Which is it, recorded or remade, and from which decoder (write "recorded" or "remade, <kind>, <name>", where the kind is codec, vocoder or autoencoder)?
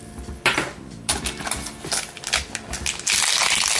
recorded